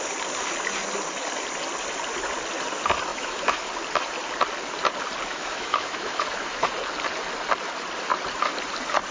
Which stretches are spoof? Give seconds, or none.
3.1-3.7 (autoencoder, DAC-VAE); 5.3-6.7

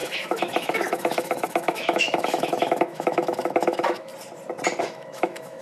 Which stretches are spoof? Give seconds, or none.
0.0-4.1 (autoencoder, DAC-VAE); 4.8-5.6

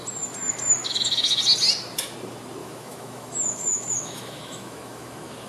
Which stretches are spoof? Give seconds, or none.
0.8-1.4 (autoencoder, DAC-VAE); 2.6-5.5

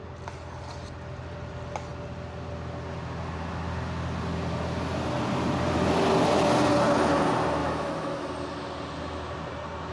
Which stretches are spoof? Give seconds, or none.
7.6-8.3 (autoencoder, DAC-VAE)